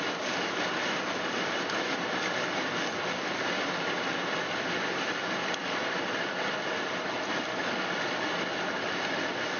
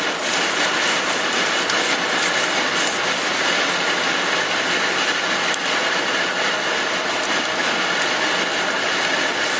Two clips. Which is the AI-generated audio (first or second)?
first